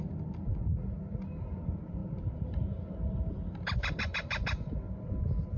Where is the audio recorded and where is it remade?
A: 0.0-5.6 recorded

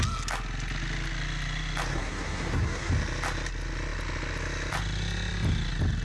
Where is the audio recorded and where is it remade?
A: 0.0-1.9 recorded; 1.9-2.9 remade; 2.9-6.0 recorded

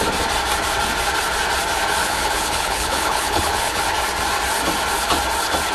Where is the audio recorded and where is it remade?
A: 0.0-2.0 recorded; 2.0-3.8 remade; 3.8-5.7 recorded

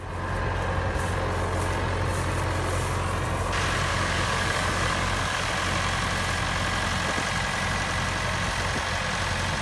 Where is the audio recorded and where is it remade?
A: 0.0-3.9 recorded; 3.9-5.5 remade; 5.5-9.6 recorded